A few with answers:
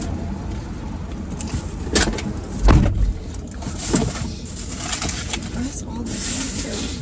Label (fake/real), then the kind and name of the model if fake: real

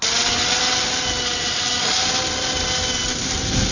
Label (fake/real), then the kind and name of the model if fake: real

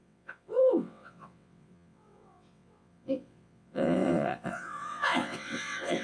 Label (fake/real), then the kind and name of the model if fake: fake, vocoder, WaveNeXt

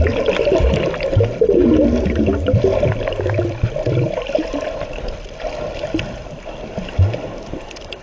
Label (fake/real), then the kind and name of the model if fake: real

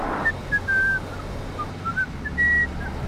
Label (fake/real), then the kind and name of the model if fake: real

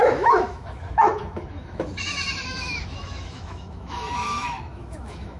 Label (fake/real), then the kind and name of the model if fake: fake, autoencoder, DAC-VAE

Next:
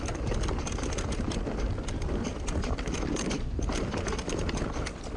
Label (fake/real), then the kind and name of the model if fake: real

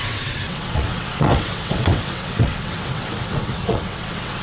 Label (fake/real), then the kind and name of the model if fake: fake, vocoder, WaveNeXt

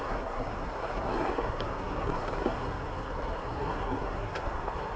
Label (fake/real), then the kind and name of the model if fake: fake, codec, SNAC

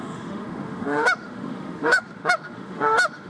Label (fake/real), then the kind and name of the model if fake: fake, autoencoder, DAC-VAE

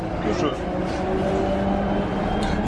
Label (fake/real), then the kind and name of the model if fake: real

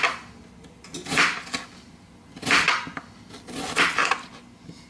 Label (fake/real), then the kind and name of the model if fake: real